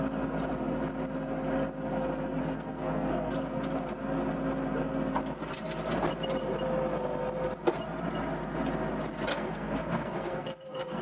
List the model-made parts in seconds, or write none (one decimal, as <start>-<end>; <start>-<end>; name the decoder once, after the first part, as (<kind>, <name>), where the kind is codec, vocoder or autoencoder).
2.4-3.3 (codec, SNAC); 9.3-11.0